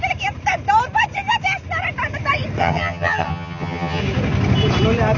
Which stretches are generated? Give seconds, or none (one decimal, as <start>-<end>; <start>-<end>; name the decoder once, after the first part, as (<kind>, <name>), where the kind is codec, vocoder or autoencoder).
2.6-4.0 (vocoder, HiFi-GAN)